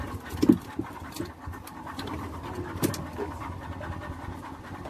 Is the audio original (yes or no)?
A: yes